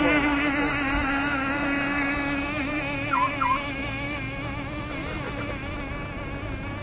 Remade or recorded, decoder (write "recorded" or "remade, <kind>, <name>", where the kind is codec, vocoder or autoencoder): recorded